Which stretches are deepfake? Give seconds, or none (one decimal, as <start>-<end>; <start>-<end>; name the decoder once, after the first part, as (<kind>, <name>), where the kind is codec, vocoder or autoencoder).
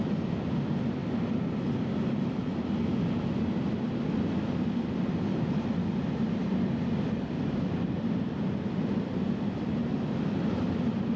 none